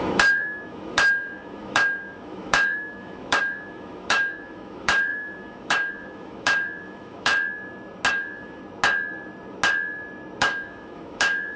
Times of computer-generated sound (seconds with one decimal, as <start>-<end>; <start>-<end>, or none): 0.0-7.3; 8.1-8.6; 10.4-11.6